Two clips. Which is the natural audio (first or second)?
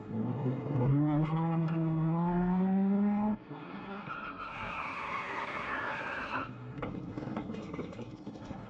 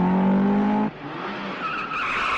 second